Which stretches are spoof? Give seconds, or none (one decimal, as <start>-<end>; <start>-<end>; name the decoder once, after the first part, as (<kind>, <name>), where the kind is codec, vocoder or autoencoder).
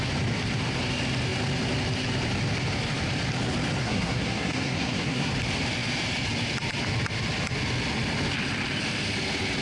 3.8-5.3 (codec, SNAC)